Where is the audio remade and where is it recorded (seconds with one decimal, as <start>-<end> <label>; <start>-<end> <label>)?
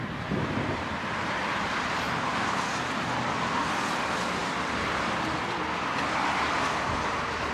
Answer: 0.0-7.5 recorded